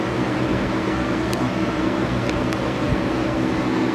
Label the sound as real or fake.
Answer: fake